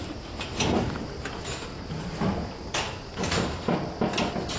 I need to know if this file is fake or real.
real